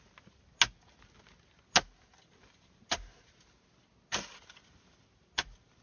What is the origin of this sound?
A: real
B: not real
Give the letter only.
A